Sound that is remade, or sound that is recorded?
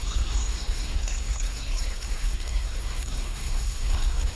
remade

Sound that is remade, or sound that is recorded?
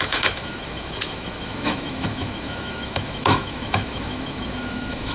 remade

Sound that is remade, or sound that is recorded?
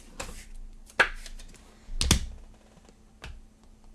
recorded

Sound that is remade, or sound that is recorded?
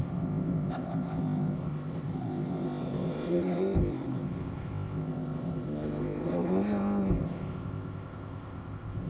remade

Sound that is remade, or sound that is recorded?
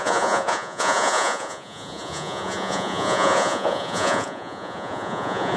remade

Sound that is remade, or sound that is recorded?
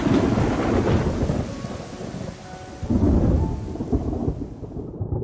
recorded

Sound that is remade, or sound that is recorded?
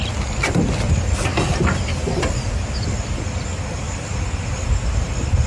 recorded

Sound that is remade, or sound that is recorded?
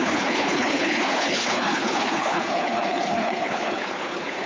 remade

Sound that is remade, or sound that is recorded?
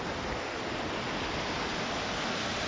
recorded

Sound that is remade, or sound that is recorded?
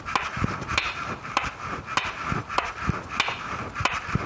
recorded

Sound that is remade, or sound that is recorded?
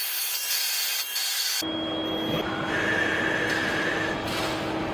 recorded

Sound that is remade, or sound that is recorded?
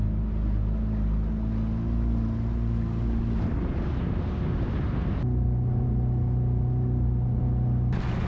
recorded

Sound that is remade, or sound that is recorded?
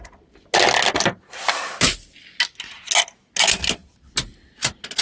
recorded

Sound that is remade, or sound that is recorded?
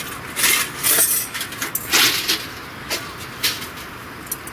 recorded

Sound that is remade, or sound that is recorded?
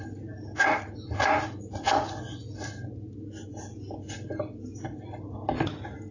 recorded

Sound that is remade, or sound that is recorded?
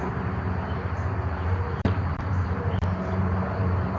remade